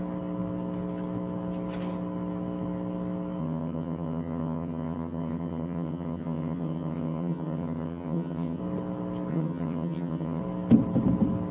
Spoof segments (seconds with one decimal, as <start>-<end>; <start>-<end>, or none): 3.4-8.6; 9.3-10.4